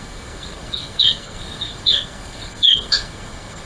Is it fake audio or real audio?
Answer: fake